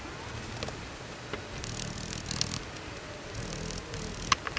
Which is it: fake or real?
real